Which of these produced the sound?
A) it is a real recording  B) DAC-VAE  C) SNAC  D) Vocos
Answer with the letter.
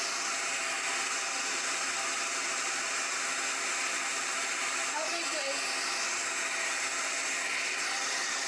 A